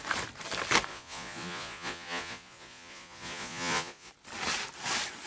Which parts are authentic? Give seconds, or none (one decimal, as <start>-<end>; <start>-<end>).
0.0-0.9; 4.1-5.3

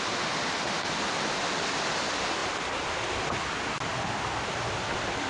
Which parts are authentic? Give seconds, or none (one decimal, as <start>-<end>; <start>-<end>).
0.0-5.3

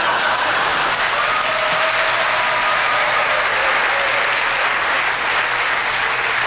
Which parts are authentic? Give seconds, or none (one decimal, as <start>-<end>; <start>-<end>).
0.7-2.7; 3.3-6.5

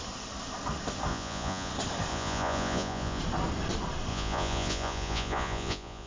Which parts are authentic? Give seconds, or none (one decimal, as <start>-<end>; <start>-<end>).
0.0-1.1; 1.7-2.1; 3.2-4.1

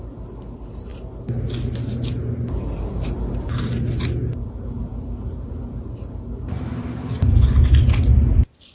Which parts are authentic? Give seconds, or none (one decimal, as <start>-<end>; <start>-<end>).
0.0-8.7

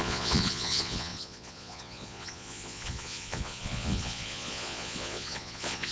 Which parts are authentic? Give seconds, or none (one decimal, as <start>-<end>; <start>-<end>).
none

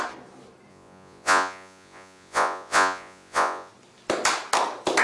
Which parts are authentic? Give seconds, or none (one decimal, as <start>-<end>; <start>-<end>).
0.0-0.7; 3.7-5.0

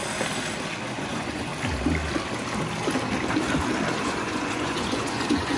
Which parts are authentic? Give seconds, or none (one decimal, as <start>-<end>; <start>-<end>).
0.0-0.9; 1.5-4.0